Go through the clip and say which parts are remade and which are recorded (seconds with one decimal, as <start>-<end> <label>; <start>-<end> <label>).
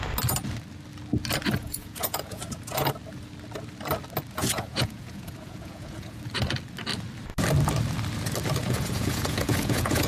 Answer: 0.0-1.6 recorded; 1.6-2.4 remade; 2.4-4.4 recorded; 4.4-6.2 remade; 6.2-8.6 recorded; 8.6-10.1 remade